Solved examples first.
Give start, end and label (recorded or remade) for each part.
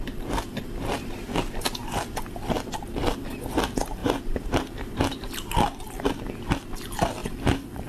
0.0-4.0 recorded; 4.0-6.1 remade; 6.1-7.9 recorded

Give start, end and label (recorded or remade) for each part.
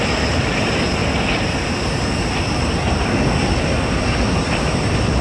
0.0-5.2 recorded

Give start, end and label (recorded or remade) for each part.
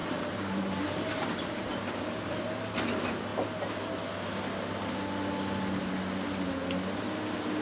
0.0-2.2 remade; 2.2-7.6 recorded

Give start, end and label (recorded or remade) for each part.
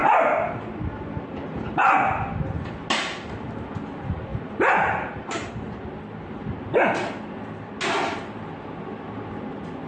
0.0-4.3 recorded; 4.3-5.5 remade; 5.5-9.9 recorded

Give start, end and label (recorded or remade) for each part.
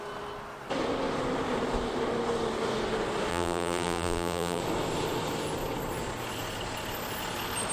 0.0-3.3 recorded; 3.3-4.6 remade; 4.6-7.7 recorded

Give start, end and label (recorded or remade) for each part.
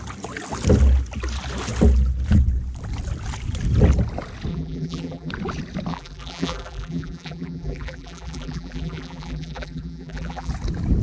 0.0-4.5 recorded; 4.5-5.3 remade; 5.3-5.9 recorded; 5.9-10.5 remade; 10.5-11.0 recorded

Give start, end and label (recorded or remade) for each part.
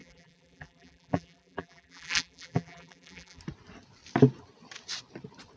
0.0-3.4 remade; 3.4-5.6 recorded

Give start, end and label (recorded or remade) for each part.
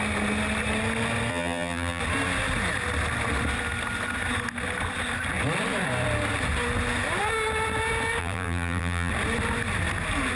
0.0-1.3 recorded; 1.3-2.0 remade; 2.0-8.2 recorded; 8.2-9.1 remade; 9.1-10.4 recorded